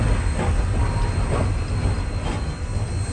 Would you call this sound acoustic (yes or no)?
yes